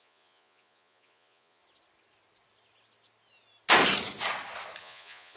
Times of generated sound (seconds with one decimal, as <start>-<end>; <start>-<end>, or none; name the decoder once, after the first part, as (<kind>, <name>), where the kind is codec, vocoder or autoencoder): 0.0-1.6 (vocoder, Vocos); 4.8-5.4